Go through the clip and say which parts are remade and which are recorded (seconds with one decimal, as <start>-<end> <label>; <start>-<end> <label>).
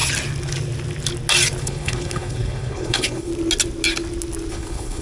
0.0-1.6 recorded; 1.6-3.3 remade; 3.3-4.5 recorded; 4.5-5.0 remade